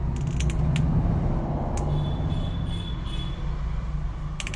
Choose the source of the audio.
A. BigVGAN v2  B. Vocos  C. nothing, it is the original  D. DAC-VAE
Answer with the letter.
C